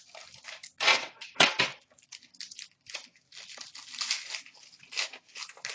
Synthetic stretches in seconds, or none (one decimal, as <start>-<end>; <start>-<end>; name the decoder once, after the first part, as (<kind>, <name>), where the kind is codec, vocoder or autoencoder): 0.9-1.6 (vocoder, WaveNeXt)